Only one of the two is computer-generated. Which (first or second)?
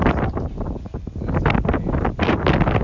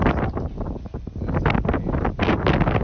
first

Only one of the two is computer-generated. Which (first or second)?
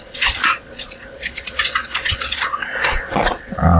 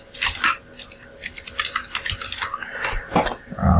first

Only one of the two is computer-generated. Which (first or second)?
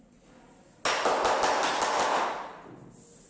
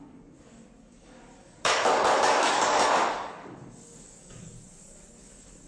second